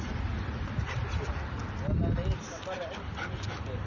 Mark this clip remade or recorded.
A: recorded